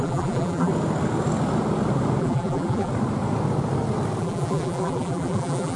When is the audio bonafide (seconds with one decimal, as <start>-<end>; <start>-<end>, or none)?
0.7-2.2; 2.9-4.2

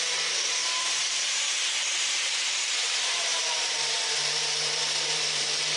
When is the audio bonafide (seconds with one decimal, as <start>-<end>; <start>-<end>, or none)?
none

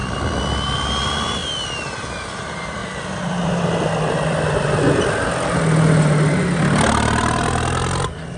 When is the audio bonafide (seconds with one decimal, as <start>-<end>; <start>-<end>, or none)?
0.9-2.8; 5.5-8.4

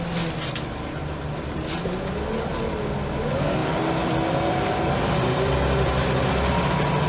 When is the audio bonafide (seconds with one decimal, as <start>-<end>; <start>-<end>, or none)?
0.0-1.0; 1.7-3.6; 6.3-7.1

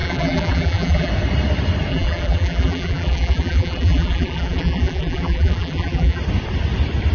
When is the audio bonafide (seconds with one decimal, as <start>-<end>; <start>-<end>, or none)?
1.1-1.9; 6.2-7.1

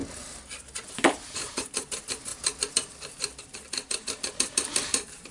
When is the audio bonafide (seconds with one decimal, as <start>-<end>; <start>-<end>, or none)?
0.0-0.9; 2.3-3.4